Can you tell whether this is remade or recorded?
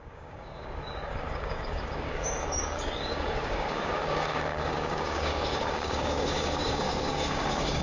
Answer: remade